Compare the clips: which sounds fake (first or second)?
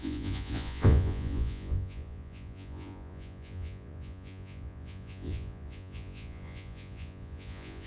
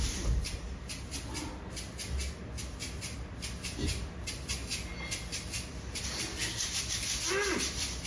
first